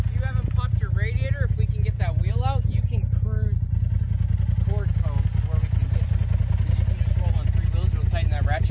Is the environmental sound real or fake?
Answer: real